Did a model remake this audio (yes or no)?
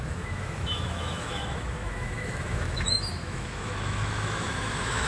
yes